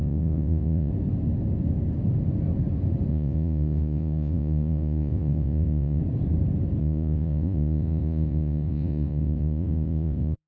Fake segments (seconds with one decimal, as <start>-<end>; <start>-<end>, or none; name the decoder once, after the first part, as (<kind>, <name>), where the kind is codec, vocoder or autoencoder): 0.0-0.9 (vocoder, Vocos); 3.1-6.0; 6.8-10.5